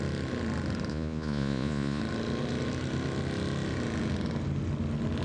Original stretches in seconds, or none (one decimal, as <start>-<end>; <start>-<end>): 0.0-0.9; 2.0-5.2